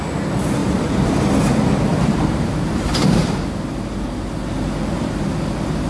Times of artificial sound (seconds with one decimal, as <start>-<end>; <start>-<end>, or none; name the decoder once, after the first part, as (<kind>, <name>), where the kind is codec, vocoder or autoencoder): 0.6-1.1 (vocoder, BigVGAN v2); 1.9-3.7